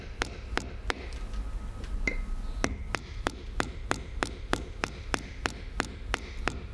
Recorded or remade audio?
recorded